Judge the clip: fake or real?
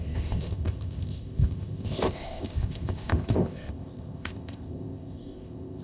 fake